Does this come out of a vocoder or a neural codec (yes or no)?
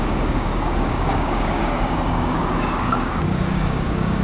yes